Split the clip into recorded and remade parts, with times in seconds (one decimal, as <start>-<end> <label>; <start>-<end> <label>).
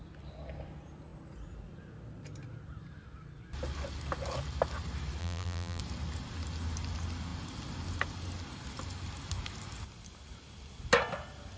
0.0-5.2 recorded; 5.2-5.8 remade; 5.8-11.6 recorded